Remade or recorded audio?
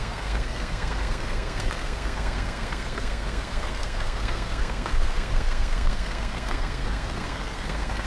remade